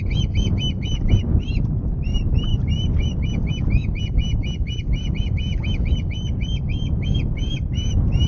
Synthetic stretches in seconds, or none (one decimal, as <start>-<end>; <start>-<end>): none